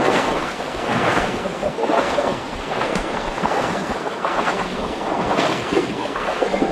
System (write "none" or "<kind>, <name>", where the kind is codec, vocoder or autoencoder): codec, SNAC